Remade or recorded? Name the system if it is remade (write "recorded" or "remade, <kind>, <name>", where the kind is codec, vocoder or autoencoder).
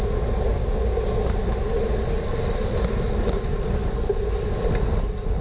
recorded